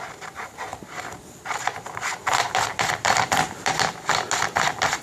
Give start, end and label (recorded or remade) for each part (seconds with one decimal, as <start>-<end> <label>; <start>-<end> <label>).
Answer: 0.0-5.0 recorded

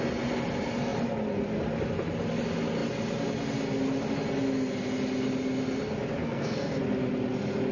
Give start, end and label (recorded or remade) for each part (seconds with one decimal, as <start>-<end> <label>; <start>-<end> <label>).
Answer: 0.0-6.2 recorded; 6.2-6.8 remade; 6.8-7.7 recorded